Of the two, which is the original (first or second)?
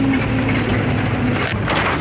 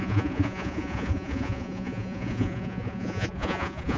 first